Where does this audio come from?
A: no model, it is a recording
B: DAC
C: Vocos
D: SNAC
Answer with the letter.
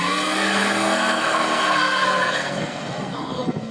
D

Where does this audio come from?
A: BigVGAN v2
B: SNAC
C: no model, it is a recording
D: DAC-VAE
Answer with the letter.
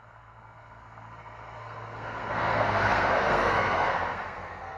B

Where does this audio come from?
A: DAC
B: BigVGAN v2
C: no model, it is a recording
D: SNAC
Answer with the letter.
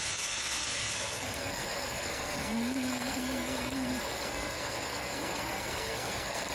D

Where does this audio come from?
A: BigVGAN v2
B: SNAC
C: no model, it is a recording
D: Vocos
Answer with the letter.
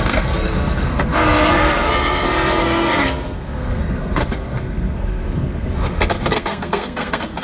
B